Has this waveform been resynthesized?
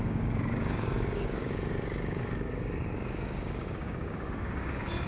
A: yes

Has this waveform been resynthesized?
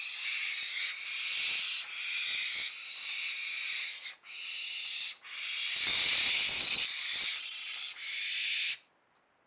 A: no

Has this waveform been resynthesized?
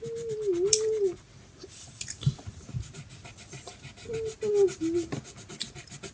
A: no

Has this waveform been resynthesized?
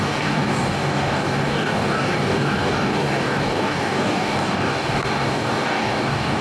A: yes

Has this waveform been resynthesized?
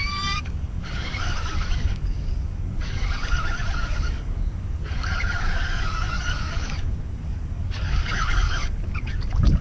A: yes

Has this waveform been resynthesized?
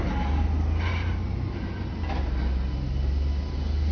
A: no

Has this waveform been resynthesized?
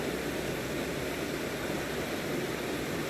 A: no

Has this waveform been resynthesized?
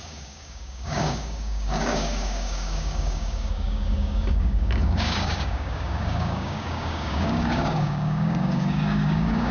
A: yes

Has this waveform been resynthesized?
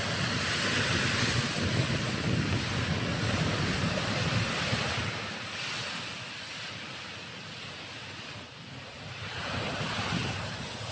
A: no